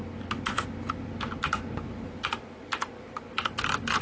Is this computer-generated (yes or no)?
no